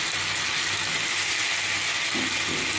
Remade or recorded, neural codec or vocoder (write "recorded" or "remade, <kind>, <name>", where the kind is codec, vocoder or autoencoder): recorded